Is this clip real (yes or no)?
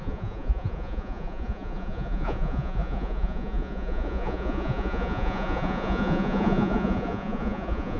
no